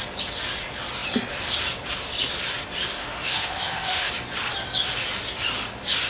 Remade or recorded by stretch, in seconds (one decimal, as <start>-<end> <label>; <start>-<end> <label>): 0.0-3.0 recorded; 3.0-4.1 remade; 4.1-6.1 recorded